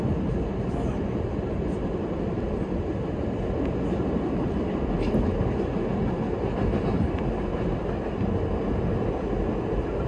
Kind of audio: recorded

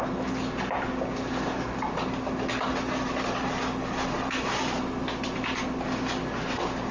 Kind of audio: recorded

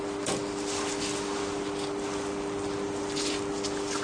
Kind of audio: recorded